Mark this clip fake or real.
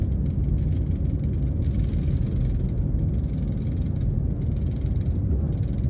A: real